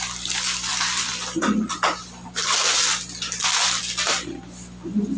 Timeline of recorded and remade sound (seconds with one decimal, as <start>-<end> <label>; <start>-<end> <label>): 0.0-5.2 recorded